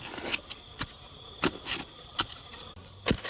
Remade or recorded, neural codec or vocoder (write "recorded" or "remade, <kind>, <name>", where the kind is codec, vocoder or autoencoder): recorded